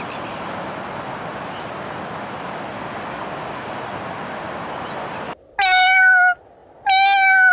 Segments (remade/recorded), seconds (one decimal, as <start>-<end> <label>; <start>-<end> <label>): 0.0-7.5 recorded